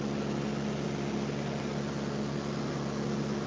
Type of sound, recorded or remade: recorded